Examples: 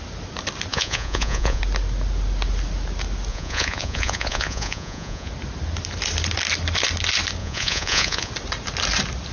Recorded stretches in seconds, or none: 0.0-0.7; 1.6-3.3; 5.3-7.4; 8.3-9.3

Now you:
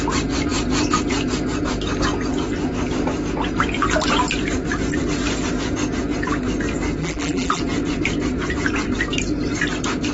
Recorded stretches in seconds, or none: 0.0-7.0; 7.6-10.1

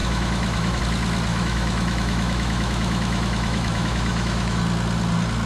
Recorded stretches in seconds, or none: 0.8-1.3; 4.6-5.5

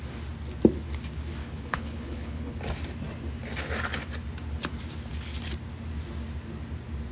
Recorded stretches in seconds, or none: 0.0-1.4; 2.5-7.1